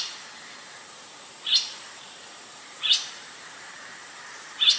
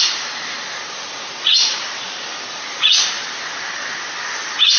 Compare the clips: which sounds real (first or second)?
second